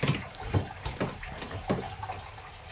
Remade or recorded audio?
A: recorded